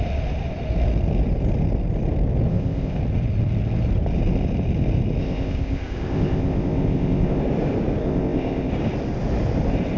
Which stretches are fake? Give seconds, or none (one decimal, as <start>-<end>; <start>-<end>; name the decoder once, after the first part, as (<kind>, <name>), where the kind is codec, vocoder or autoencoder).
2.5-3.0 (codec, ZipCodec); 5.2-7.4; 8.0-8.7